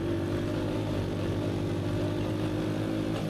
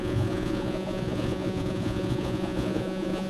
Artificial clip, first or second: second